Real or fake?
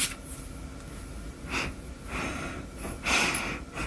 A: real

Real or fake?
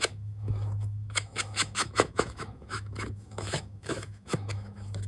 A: fake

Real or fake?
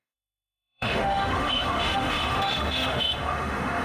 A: fake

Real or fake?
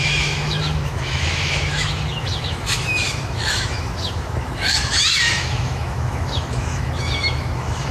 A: fake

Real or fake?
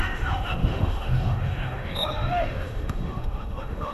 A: fake